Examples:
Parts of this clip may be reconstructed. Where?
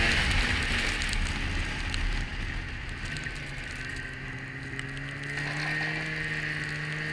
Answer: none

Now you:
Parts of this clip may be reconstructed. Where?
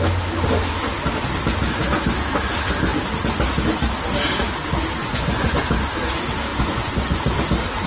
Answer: 5.0-5.6 (vocoder, Vocos); 6.5-7.2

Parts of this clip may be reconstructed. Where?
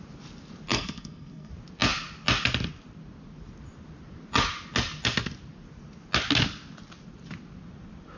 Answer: 0.7-1.5 (codec, SNAC)